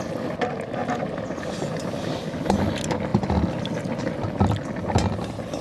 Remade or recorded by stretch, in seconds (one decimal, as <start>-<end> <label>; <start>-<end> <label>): 0.0-5.6 recorded